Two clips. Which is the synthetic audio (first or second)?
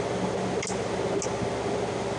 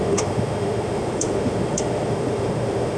second